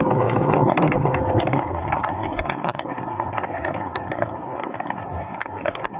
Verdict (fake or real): fake